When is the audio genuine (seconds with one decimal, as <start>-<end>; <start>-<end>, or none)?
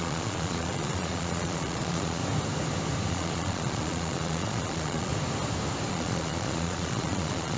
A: 2.2-3.1; 5.1-5.9